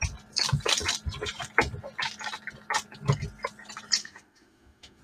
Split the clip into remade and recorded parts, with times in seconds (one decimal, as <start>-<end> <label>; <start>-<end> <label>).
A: 0.0-4.0 recorded; 4.0-5.0 remade